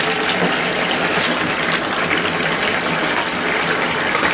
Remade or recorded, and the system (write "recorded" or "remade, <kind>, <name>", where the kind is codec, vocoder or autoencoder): recorded